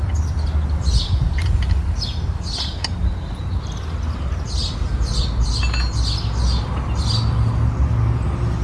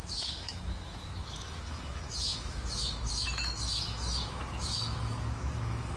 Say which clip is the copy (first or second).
second